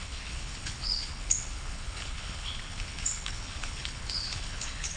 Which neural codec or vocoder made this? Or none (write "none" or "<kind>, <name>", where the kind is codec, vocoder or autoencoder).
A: codec, HILCodec